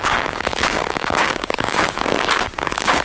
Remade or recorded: remade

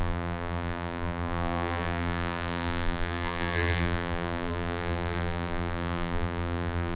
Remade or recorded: remade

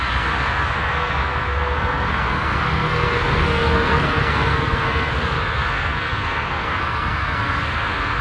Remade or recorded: remade